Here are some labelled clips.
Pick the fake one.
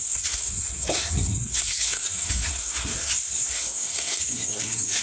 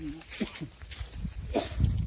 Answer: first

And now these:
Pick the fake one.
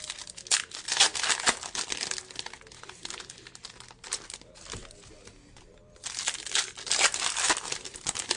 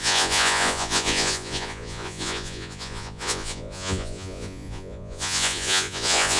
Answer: second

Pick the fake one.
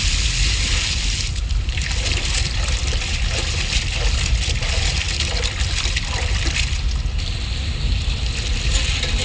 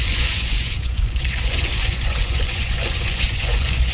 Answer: second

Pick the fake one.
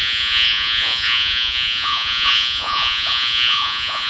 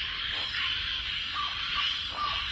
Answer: first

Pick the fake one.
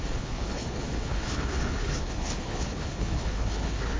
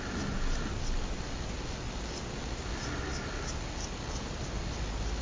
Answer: first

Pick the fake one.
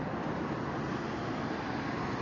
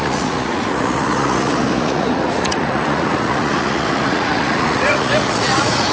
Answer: second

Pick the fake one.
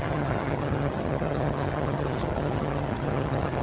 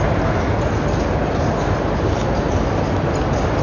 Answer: first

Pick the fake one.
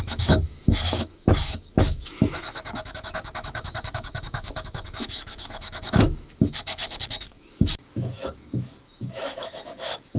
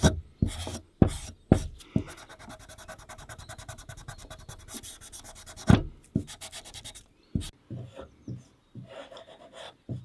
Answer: first